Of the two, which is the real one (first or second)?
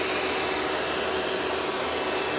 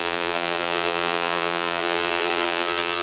first